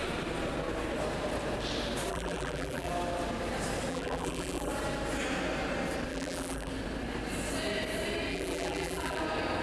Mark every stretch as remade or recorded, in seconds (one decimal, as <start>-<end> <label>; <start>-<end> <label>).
0.0-2.1 recorded; 2.1-2.9 remade; 2.9-3.9 recorded; 3.9-4.7 remade; 4.7-6.1 recorded; 6.1-6.7 remade; 6.7-8.3 recorded; 8.3-9.2 remade; 9.2-9.6 recorded